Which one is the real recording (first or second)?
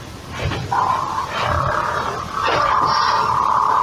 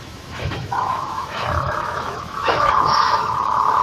first